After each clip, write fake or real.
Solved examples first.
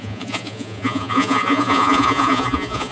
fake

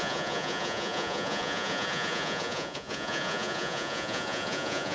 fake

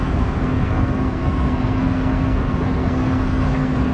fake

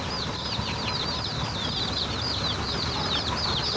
real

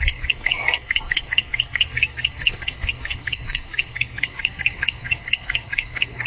fake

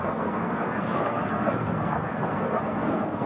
fake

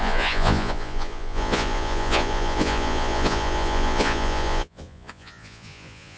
fake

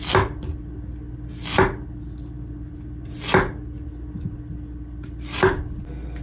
real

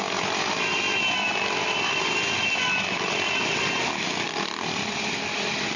real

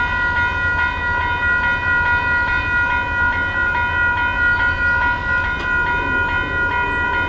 real